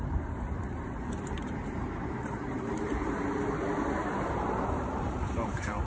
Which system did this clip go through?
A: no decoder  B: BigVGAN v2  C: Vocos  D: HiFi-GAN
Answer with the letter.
B